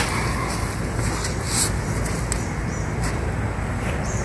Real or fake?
real